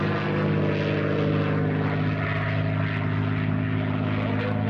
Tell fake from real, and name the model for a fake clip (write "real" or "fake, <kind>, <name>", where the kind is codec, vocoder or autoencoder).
real